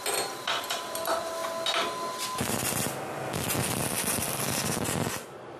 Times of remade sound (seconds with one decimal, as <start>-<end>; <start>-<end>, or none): 0.0-1.4; 2.5-5.6